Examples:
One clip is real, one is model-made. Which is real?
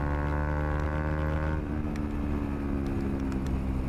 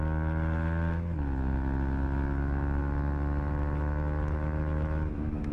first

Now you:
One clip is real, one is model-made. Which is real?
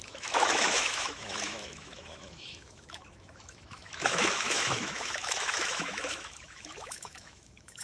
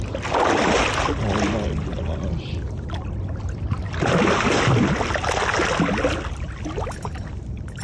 second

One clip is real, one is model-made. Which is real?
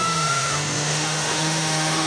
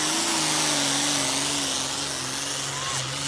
second